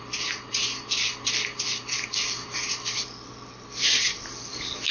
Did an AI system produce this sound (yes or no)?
no